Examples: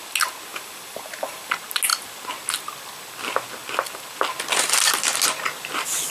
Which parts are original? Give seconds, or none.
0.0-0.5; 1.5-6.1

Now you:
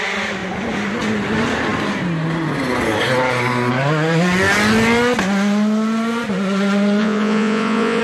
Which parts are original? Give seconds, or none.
0.0-7.0

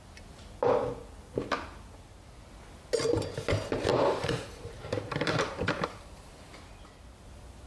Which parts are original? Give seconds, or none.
0.0-3.9; 6.6-7.7

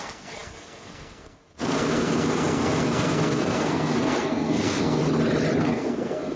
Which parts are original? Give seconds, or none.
5.0-5.6

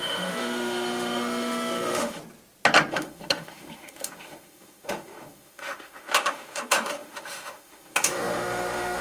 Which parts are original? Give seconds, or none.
2.2-2.9

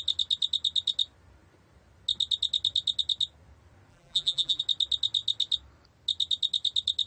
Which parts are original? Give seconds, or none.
0.0-3.9; 4.6-7.1

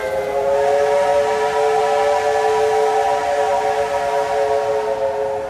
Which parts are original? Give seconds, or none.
0.0-5.5

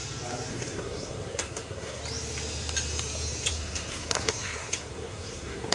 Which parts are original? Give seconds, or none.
0.0-0.5; 2.0-3.5